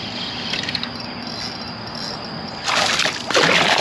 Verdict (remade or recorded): recorded